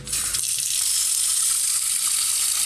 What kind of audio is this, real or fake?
fake